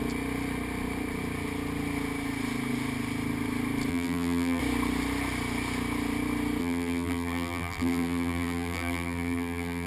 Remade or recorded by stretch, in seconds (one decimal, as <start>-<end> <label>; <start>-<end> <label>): 0.0-3.9 recorded; 3.9-4.6 remade; 4.6-6.6 recorded; 6.6-9.9 remade